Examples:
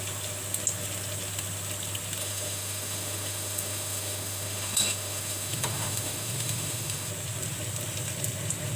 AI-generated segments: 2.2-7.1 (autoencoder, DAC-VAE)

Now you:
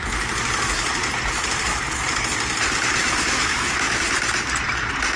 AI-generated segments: 3.0-4.0 (autoencoder, DAC-VAE)

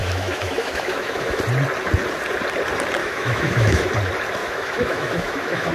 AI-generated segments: 0.0-1.4 (autoencoder, DAC-VAE); 3.0-3.9; 4.4-5.7

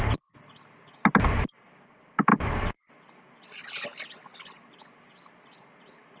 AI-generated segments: none